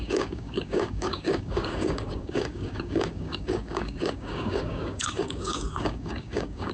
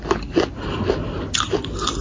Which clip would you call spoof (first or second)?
first